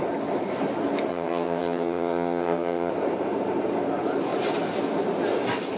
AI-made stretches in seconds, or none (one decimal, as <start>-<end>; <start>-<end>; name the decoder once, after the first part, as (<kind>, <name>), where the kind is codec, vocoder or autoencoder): 1.1-2.9 (vocoder, HiFi-GAN)

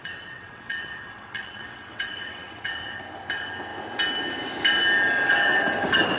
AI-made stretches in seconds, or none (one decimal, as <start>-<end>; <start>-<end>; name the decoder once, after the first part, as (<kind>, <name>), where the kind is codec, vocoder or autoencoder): 0.0-3.0 (vocoder, WaveNeXt)